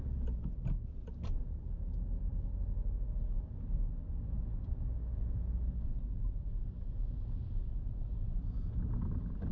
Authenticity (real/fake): real